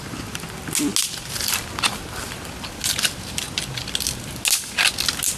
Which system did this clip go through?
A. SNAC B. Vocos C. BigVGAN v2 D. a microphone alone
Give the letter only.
D